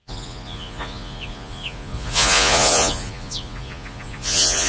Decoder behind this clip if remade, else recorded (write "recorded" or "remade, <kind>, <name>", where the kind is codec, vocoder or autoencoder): remade, vocoder, Vocos